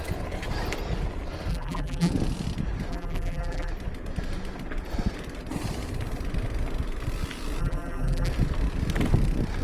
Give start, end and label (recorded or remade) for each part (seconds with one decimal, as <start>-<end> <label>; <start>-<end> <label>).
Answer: 0.0-1.5 recorded; 1.5-2.1 remade; 2.1-2.9 recorded; 2.9-3.7 remade; 3.7-7.6 recorded; 7.6-8.3 remade; 8.3-9.6 recorded